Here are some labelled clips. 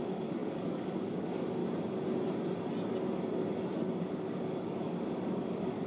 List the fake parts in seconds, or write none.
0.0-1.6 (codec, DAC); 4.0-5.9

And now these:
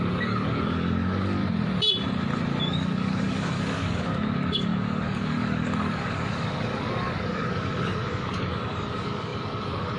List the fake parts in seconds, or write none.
0.0-1.4 (codec, DAC); 2.6-10.0

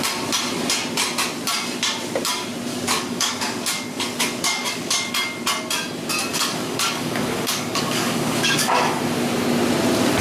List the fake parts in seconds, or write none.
2.7-5.1 (codec, DAC); 6.3-9.0

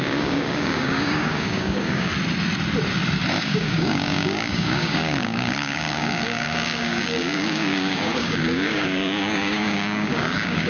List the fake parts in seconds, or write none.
0.0-2.1 (codec, DAC); 3.4-10.7

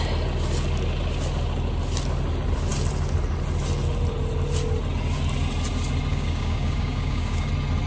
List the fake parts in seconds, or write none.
6.1-7.5 (codec, DAC)

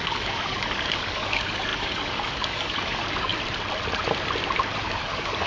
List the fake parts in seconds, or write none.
0.0-3.3 (codec, DAC); 4.8-5.5